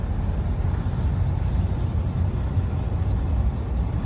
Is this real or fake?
real